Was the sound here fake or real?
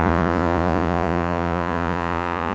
fake